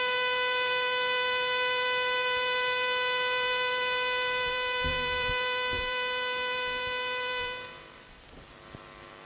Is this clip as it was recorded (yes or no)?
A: no